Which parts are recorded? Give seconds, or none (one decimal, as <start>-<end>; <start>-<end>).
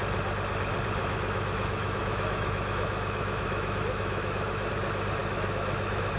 0.0-1.0; 4.7-5.2